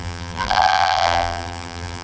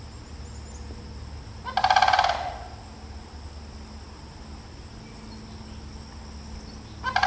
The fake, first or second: first